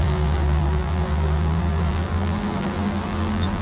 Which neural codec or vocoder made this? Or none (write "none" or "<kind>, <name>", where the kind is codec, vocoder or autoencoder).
vocoder, BigVGAN v2